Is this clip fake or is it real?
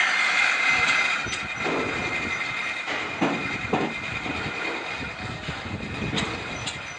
real